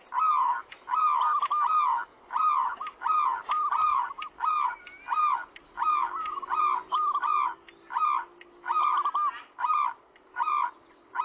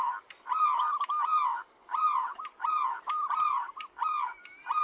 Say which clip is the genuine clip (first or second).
first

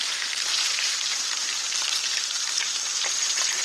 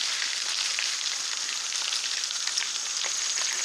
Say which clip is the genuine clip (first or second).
second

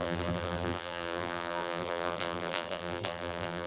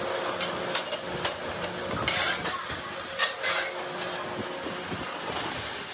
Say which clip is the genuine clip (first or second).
second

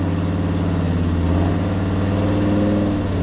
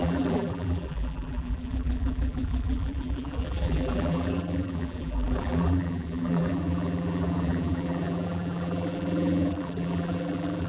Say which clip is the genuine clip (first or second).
first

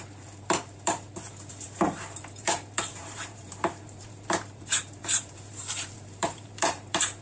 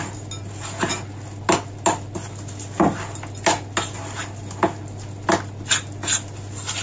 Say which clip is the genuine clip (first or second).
second